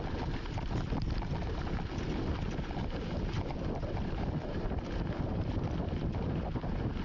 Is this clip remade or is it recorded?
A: recorded